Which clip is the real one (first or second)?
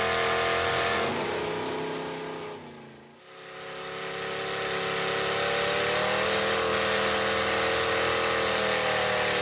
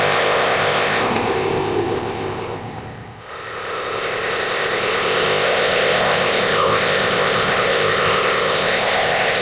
first